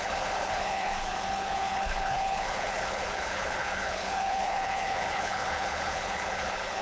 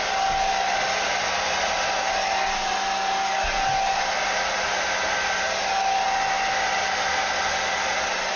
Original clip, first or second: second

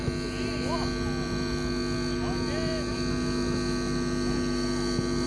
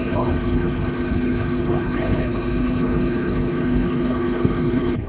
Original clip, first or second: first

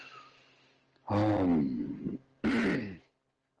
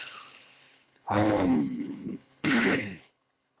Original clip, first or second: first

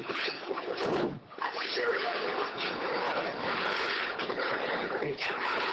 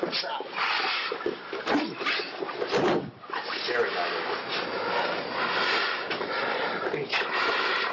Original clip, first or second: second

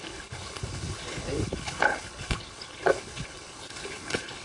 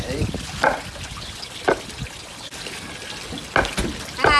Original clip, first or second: second